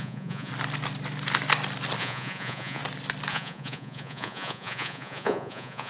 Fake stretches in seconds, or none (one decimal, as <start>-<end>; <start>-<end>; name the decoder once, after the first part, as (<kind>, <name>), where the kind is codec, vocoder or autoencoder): 0.0-0.5 (vocoder, Vocos); 2.0-2.8; 3.3-5.9

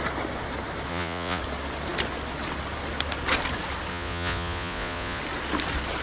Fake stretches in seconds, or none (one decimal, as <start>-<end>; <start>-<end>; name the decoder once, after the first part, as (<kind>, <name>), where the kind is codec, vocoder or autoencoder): 0.9-1.4 (vocoder, Vocos); 3.9-5.2

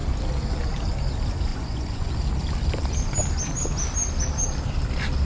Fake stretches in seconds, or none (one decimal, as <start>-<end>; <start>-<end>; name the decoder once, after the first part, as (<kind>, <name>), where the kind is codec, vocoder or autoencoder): 1.5-2.1 (vocoder, Vocos)

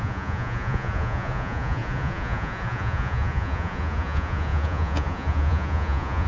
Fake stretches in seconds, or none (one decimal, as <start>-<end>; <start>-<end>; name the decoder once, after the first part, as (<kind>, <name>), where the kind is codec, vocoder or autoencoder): 0.0-6.3 (vocoder, Vocos)

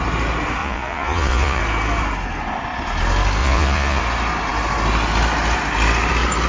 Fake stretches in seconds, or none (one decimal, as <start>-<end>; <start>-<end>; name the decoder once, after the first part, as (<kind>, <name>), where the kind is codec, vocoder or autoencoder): 0.6-1.6 (vocoder, Vocos); 3.4-4.0